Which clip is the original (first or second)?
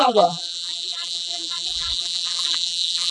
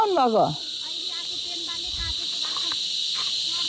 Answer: second